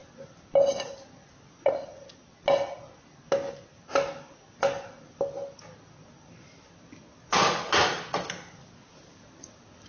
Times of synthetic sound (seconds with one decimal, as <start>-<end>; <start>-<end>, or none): none

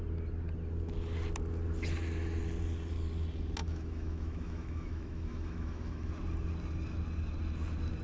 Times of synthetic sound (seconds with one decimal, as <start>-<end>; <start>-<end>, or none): 3.6-6.1

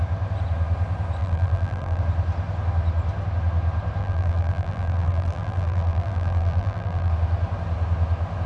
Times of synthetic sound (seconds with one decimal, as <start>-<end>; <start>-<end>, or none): 1.2-2.0; 4.0-7.1

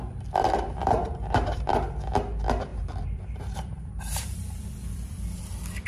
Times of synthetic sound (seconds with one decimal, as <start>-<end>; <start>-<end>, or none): 0.8-1.7; 2.7-4.6

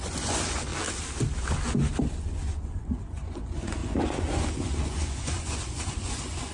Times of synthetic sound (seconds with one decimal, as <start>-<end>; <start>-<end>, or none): 0.0-0.7; 2.0-6.5

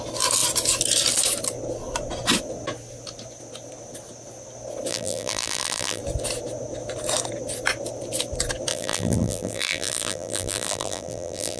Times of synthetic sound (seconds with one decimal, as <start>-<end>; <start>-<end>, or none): 4.9-6.0; 8.7-11.6